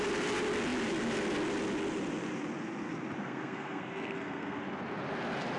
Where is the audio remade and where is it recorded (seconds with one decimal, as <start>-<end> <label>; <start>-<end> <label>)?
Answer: 0.0-3.2 recorded; 3.2-4.6 remade; 4.6-5.6 recorded